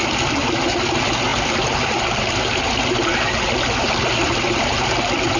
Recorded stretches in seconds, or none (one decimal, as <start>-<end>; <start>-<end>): 0.0-5.4